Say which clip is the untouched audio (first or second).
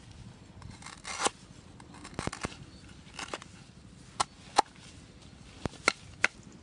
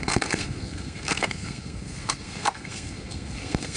first